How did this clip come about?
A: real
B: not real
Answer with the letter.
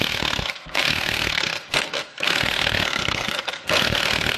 B